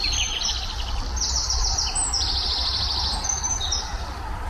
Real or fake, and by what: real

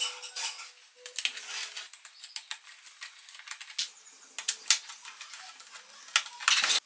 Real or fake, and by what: real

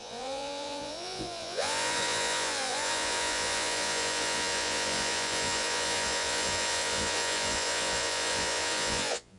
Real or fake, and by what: fake, vocoder, Vocos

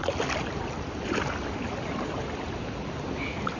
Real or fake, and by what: real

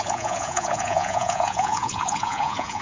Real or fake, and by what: fake, vocoder, Vocos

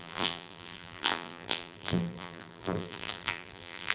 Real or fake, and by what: fake, vocoder, BigVGAN v2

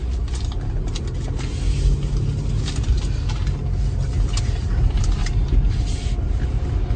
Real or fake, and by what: real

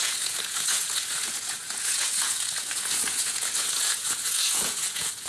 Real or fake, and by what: fake, vocoder, Vocos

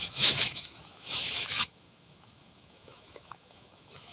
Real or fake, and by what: fake, autoencoder, DAC-VAE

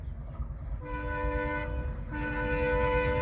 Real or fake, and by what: real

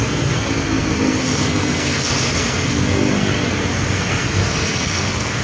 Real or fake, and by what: fake, codec, SNAC